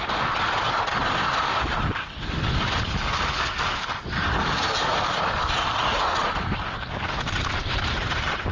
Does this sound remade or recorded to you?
recorded